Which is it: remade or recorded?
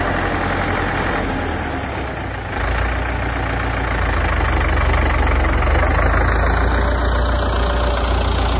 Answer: recorded